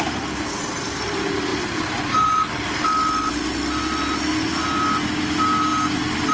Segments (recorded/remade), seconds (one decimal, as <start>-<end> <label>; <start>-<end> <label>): 0.0-6.3 recorded